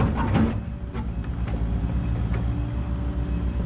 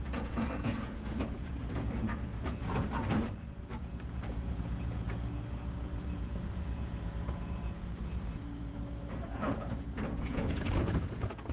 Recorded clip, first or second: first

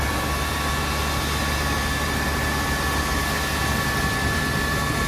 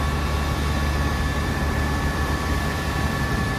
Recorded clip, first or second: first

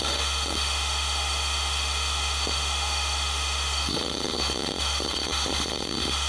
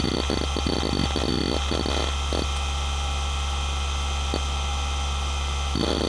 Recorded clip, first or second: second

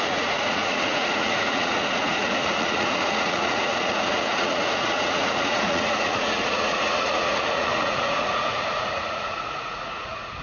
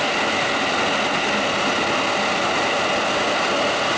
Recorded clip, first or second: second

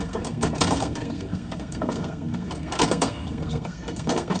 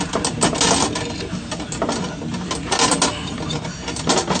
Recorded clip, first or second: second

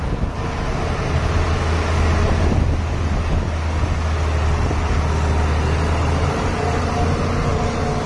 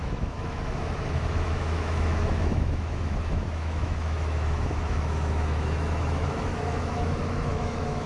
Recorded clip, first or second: first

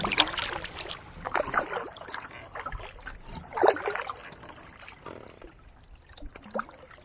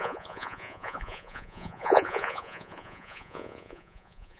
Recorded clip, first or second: first